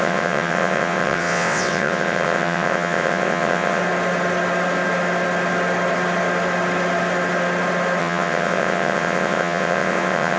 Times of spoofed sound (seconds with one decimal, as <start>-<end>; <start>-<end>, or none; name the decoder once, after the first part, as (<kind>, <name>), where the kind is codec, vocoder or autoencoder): 0.0-3.8 (vocoder, WaveNeXt); 8.0-10.4